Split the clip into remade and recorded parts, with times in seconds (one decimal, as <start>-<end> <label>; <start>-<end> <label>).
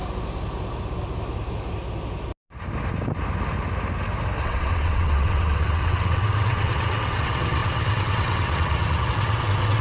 0.0-4.4 recorded; 4.4-9.8 remade